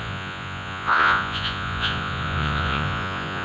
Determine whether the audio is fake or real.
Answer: fake